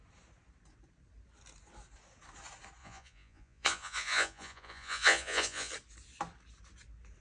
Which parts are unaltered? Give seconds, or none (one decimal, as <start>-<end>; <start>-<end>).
0.0-2.8; 5.7-7.2